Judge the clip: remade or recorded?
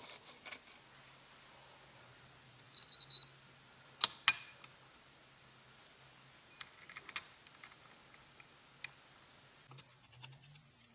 recorded